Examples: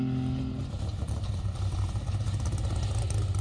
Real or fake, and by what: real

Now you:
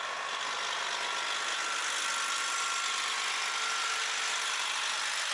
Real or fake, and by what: real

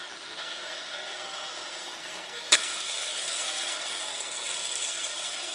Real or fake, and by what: fake, codec, SNAC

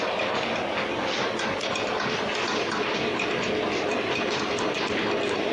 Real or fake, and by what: real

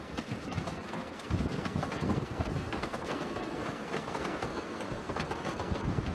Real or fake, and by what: fake, codec, SNAC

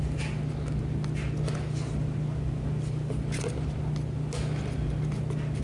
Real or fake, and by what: real